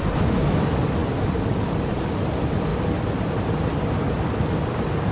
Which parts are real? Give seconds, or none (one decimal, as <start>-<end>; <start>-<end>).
0.0-5.1